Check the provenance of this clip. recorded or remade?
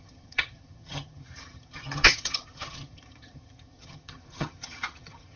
remade